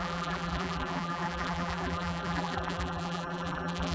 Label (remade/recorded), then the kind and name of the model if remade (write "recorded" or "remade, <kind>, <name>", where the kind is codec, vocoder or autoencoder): remade, vocoder, BigVGAN v2